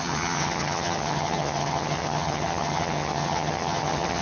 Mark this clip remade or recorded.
remade